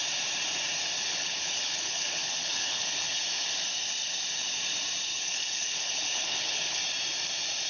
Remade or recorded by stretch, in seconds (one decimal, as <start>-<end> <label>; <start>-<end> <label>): 0.0-1.1 recorded; 1.1-3.2 remade; 3.2-5.1 recorded; 5.1-6.8 remade; 6.8-7.7 recorded